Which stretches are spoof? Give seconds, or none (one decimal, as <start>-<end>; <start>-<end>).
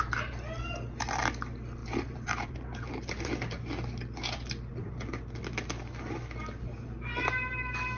1.8-3.7